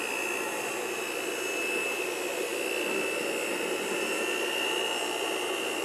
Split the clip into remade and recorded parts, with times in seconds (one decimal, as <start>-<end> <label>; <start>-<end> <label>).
0.0-5.8 recorded

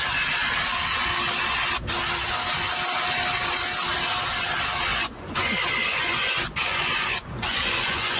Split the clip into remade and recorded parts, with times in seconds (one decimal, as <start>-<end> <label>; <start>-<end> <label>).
0.0-4.9 recorded; 4.9-5.5 remade; 5.5-5.9 recorded; 5.9-8.2 remade

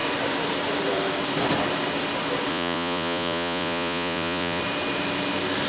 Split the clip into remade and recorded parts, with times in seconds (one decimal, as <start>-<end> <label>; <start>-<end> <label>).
0.0-2.5 recorded; 2.5-4.6 remade; 4.6-5.7 recorded